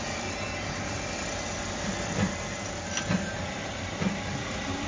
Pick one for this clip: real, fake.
real